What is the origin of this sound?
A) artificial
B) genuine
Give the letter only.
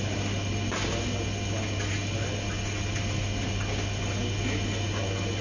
B